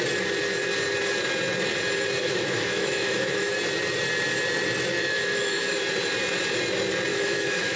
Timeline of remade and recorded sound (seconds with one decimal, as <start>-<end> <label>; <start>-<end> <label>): 0.0-2.2 recorded; 2.2-3.5 remade; 3.5-4.9 recorded; 4.9-5.8 remade; 5.8-7.1 recorded; 7.1-7.8 remade